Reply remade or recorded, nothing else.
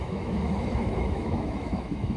remade